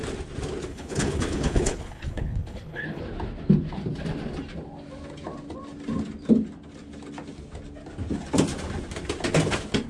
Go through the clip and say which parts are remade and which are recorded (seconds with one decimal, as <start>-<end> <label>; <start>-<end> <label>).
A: 0.0-0.7 recorded; 0.7-3.0 remade; 3.0-9.9 recorded